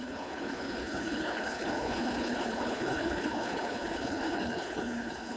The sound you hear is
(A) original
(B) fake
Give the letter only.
B